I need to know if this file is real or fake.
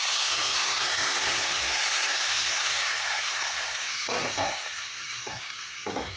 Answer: fake